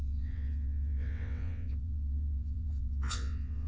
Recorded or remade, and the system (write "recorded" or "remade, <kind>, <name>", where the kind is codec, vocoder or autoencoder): remade, vocoder, WaveNeXt